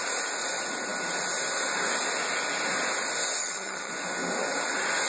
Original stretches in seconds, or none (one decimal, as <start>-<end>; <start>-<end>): 0.0-3.4; 3.9-5.1